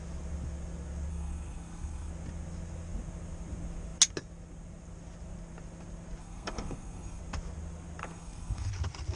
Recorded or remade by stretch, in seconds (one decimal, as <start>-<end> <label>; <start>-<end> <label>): 0.0-1.1 recorded; 1.1-2.1 remade; 2.1-6.2 recorded; 6.2-7.2 remade; 7.2-8.0 recorded; 8.0-8.7 remade; 8.7-9.2 recorded